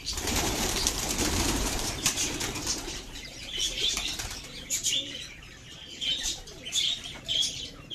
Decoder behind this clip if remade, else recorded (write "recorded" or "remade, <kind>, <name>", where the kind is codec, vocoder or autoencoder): remade, vocoder, BigVGAN v2